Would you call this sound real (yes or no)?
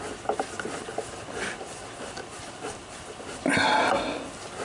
yes